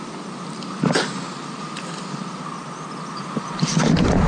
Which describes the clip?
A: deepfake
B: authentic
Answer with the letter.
B